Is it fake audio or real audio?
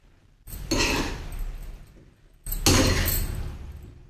real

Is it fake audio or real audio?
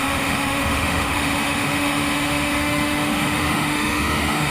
fake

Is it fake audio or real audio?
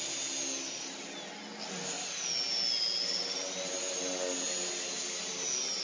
real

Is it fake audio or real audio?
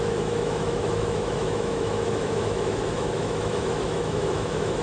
fake